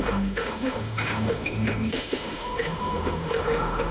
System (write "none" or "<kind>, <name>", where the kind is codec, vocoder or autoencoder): autoencoder, DAC-VAE